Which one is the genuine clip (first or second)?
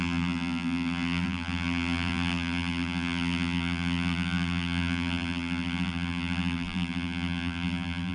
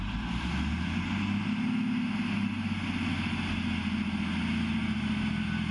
second